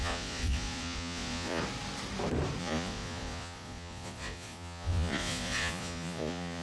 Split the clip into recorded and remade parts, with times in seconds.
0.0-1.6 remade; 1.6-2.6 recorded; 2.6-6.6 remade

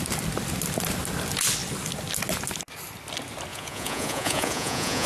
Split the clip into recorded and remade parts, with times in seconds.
0.0-3.5 recorded; 3.5-5.1 remade